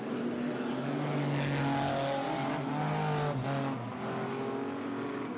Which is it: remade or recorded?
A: recorded